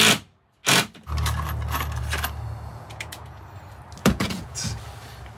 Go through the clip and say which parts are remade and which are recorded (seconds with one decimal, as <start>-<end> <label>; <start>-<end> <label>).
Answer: 0.0-2.7 recorded; 2.7-3.4 remade; 3.4-4.0 recorded; 4.0-4.8 remade; 4.8-5.4 recorded